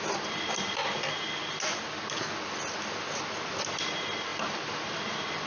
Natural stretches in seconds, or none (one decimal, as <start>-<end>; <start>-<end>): 0.0-5.5